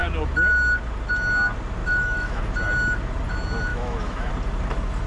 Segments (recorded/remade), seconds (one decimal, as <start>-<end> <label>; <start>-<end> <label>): 0.0-1.8 recorded; 1.8-2.4 remade; 2.4-3.7 recorded; 3.7-4.3 remade; 4.3-5.1 recorded